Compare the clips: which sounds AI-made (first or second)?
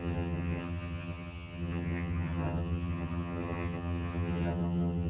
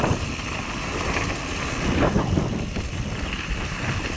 first